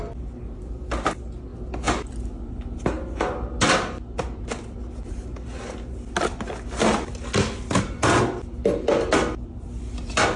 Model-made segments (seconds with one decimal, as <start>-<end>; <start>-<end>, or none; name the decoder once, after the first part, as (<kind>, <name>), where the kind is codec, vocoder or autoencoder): none